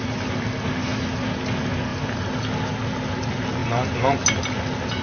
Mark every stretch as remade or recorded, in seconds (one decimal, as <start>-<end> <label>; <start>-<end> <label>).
0.0-5.0 recorded